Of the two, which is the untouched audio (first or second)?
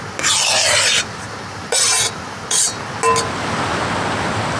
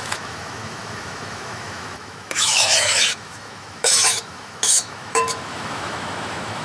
first